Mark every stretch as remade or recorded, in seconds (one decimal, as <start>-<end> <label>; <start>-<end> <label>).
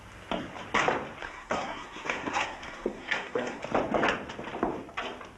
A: 0.0-1.2 recorded; 1.2-3.6 remade; 3.6-5.4 recorded